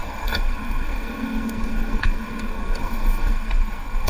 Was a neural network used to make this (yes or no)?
yes